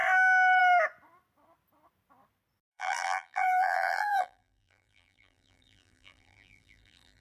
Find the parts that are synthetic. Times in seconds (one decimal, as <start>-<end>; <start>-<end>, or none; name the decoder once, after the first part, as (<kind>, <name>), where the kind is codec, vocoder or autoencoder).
2.7-7.2 (vocoder, BigVGAN v2)